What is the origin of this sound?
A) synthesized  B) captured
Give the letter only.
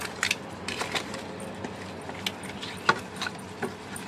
B